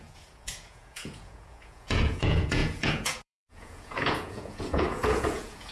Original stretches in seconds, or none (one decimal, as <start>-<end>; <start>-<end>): none